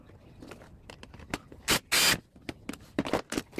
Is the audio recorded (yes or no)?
yes